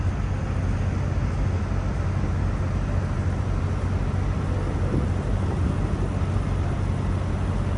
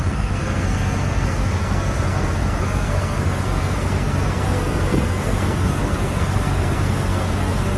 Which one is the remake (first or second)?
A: second